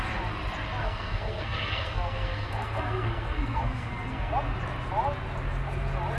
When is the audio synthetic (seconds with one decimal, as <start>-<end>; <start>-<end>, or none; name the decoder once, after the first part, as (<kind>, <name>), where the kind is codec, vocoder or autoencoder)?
0.8-4.3 (codec, SNAC)

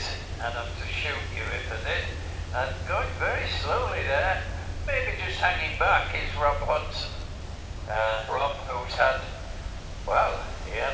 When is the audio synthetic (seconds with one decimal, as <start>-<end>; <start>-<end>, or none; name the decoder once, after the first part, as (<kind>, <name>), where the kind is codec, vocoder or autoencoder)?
7.6-8.9 (codec, DAC)

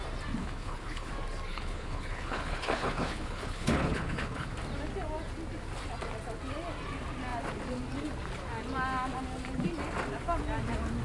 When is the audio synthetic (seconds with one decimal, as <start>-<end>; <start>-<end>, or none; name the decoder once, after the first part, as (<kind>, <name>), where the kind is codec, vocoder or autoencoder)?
0.4-1.1 (codec, HILCodec); 1.5-4.5

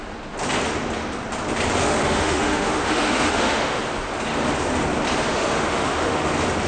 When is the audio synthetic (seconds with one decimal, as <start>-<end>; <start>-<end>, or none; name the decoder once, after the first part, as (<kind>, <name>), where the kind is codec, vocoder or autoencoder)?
1.8-3.8 (autoencoder, DAC-VAE); 5.3-6.3

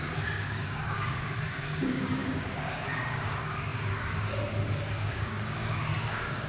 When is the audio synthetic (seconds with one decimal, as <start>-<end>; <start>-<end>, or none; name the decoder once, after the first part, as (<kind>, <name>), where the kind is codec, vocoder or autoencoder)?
0.0-6.5 (codec, DAC)

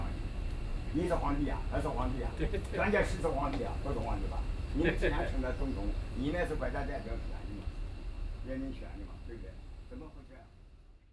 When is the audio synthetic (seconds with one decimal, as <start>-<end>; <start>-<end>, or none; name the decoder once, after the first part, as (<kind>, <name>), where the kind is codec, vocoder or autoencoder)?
0.7-1.3 (vocoder, BigVGAN v2); 3.4-4.2

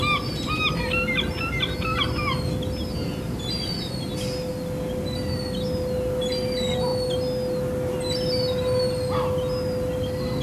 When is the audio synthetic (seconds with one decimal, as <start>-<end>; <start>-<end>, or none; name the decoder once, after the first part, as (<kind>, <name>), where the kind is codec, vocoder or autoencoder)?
none

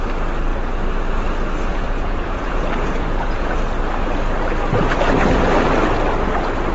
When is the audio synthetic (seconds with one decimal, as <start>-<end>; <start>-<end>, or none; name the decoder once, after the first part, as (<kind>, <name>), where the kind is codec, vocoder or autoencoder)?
1.7-3.5 (vocoder, Vocos)